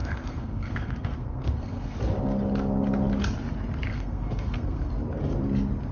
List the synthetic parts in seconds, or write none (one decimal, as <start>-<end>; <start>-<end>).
0.0-2.0; 3.9-4.9